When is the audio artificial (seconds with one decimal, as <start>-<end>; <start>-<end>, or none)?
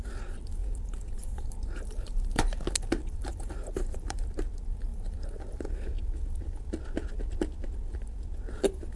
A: 0.6-2.6; 3.3-4.2; 4.9-5.4